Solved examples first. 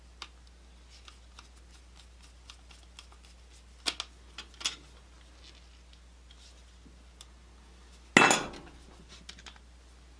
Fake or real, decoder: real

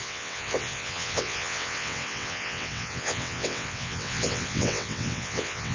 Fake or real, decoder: fake, vocoder, WaveNeXt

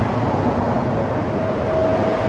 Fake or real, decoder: real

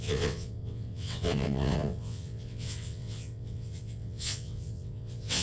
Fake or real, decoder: fake, vocoder, WaveNeXt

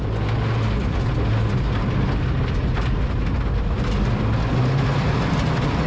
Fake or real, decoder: real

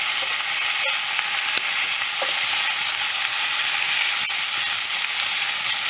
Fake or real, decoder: real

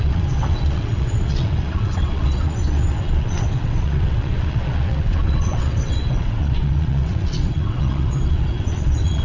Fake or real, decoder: fake, vocoder, WaveNeXt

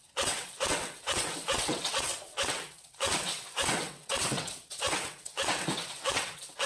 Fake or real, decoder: fake, vocoder, WaveNeXt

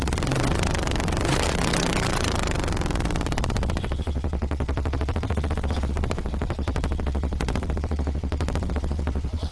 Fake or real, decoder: fake, vocoder, WaveNeXt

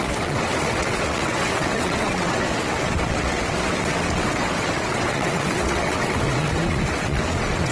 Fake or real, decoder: fake, vocoder, WaveNeXt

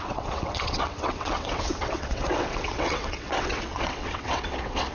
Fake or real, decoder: fake, vocoder, WaveNeXt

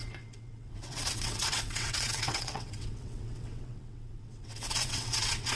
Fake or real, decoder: fake, vocoder, WaveNeXt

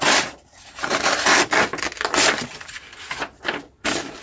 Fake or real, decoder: real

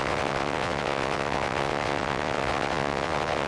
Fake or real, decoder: fake, vocoder, WaveNeXt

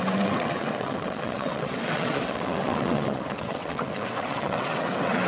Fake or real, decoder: fake, vocoder, WaveNeXt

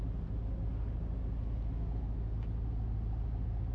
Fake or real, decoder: real